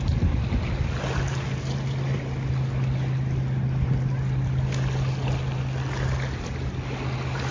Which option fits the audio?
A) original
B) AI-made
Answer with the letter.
A